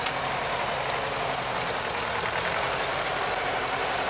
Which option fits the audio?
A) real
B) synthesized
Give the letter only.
A